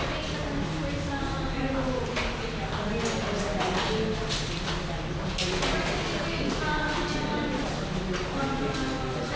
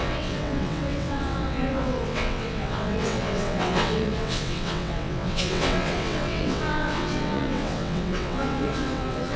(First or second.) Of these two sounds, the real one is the first